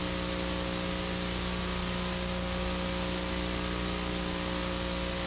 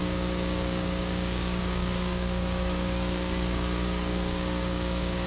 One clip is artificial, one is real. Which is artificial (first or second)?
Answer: second